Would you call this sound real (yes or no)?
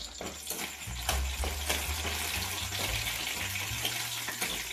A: yes